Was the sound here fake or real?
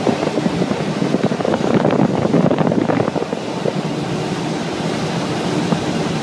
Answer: real